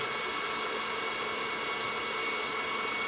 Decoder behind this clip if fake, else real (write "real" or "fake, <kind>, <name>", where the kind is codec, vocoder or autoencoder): real